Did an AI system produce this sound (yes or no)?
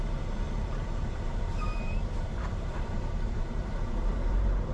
yes